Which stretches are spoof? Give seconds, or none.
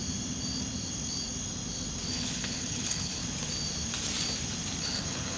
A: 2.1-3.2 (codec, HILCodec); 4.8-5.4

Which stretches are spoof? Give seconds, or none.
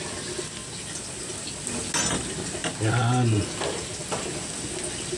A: none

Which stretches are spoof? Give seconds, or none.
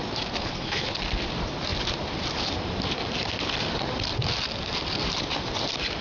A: 0.4-1.0 (codec, HILCodec)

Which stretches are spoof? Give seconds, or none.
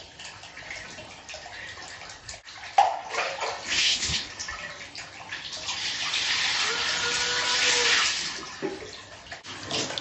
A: 3.8-4.3 (codec, HILCodec)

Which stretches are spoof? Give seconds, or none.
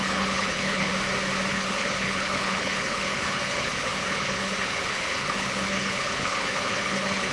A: 0.0-0.9 (codec, HILCodec); 1.5-7.3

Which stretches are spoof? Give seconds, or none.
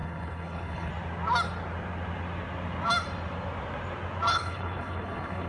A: 0.0-0.9 (codec, HILCodec); 4.3-5.5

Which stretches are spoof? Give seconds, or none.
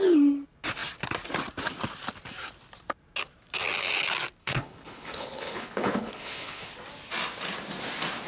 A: 4.4-6.7 (codec, HILCodec)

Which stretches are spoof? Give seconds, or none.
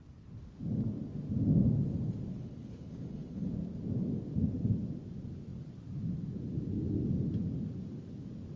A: 2.3-3.5 (codec, HILCodec)